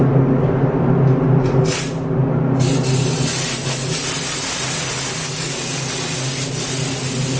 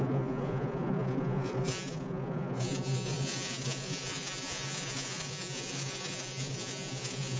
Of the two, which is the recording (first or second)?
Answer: first